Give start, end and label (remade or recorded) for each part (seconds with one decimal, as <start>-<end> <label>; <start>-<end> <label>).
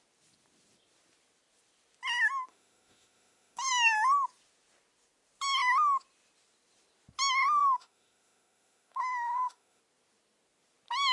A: 0.0-2.5 recorded; 2.5-3.7 remade; 3.7-7.6 recorded; 7.6-9.8 remade; 9.8-11.1 recorded